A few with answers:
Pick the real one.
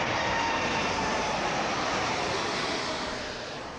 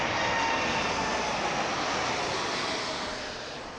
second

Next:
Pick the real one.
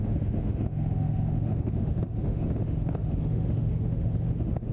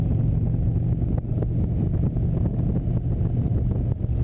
second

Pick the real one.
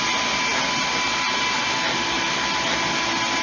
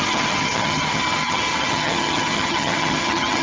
first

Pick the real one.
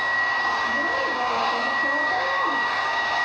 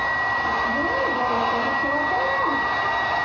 second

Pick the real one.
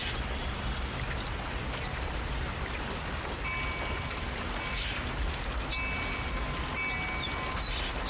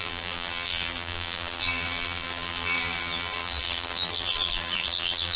first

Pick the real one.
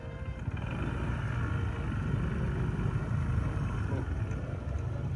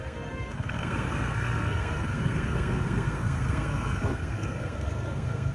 first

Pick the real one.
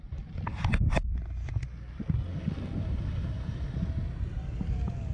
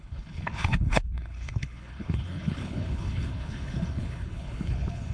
first